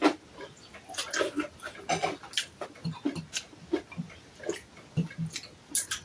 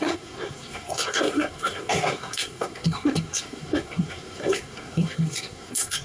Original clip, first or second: first